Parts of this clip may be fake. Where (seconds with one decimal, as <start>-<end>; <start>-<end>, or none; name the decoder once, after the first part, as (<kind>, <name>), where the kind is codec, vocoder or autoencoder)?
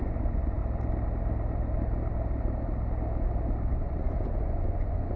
0.0-0.6 (vocoder, Vocos); 3.7-5.2